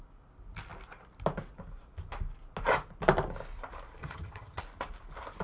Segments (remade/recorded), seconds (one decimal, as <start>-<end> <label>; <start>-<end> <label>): 0.0-4.0 recorded; 4.0-4.6 remade; 4.6-5.4 recorded